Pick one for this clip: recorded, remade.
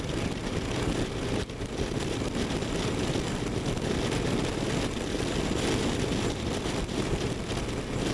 recorded